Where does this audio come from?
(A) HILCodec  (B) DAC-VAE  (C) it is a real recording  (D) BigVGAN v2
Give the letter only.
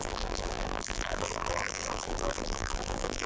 D